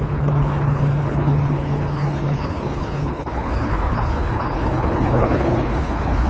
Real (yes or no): no